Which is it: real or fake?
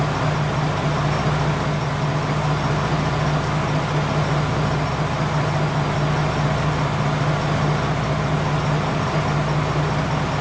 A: real